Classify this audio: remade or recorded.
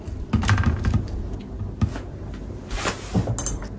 recorded